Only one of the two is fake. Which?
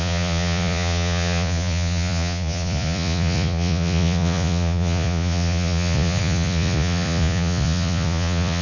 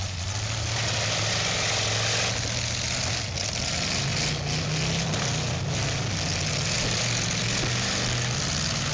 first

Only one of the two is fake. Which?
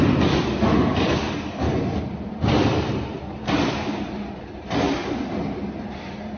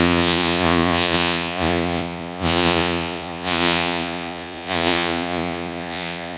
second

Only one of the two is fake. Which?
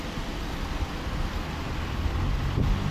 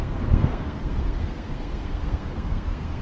second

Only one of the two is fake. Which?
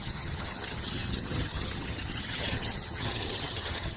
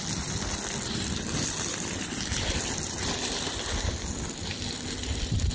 first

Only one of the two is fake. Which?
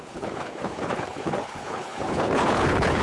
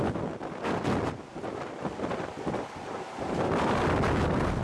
first